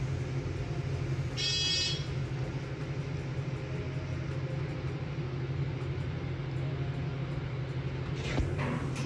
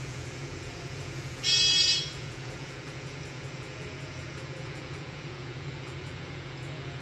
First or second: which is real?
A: first